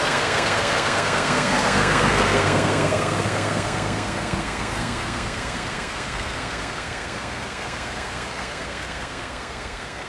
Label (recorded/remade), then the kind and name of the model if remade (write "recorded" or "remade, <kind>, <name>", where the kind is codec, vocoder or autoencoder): remade, codec, SNAC